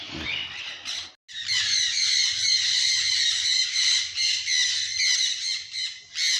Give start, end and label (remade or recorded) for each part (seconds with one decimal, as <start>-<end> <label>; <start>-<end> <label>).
0.0-6.4 recorded